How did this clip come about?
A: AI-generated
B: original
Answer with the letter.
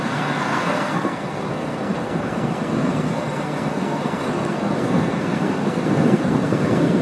A